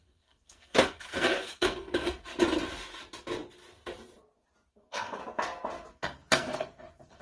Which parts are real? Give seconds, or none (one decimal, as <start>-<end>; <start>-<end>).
2.3-4.7; 5.2-5.9